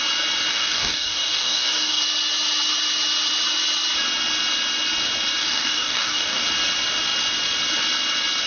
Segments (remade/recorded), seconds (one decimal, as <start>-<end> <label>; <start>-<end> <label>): 0.0-0.5 recorded; 0.5-2.0 remade; 2.0-5.4 recorded; 5.4-6.4 remade; 6.4-8.5 recorded